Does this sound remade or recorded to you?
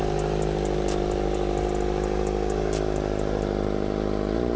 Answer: recorded